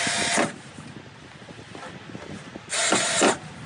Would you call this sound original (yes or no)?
yes